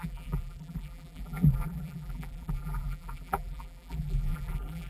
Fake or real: fake